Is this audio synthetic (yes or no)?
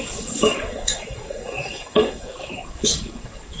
yes